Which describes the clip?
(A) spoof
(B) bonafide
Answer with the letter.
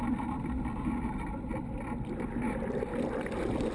A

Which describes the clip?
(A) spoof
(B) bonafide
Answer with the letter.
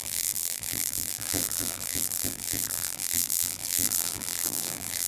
A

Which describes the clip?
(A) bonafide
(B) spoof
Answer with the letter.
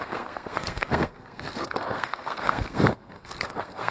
B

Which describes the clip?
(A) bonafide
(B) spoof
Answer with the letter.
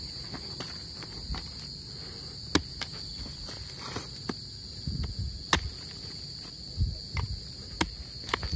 A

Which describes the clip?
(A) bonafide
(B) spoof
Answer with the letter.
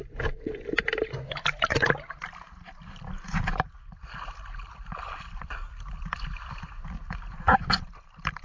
A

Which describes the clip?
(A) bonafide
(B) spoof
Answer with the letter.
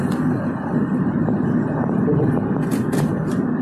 A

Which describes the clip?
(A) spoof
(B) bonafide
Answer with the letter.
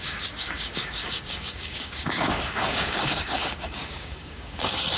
A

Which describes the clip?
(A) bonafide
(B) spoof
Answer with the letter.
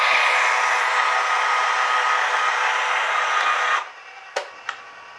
A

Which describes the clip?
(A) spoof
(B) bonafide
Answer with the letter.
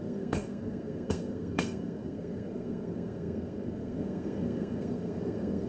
A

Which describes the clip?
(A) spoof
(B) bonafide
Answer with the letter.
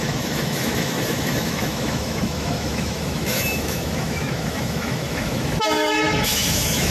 A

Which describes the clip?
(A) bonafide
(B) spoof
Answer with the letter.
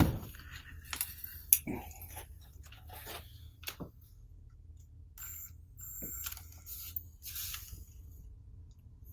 A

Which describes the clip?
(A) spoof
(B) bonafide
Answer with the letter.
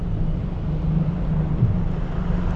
B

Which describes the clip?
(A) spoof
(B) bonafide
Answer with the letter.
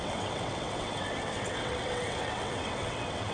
A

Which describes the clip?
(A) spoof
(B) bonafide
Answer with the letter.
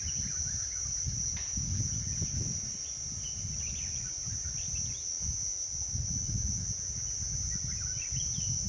B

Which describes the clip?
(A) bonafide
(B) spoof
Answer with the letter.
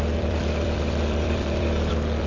B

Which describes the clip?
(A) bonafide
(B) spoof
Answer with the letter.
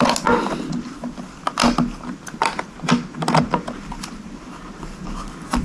A